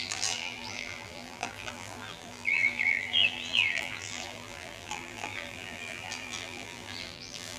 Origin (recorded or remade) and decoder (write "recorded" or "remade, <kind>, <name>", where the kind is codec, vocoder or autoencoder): remade, vocoder, BigVGAN v2